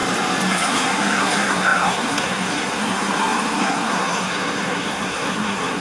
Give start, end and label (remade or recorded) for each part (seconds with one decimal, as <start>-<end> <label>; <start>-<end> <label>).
0.0-0.5 recorded; 0.5-5.8 remade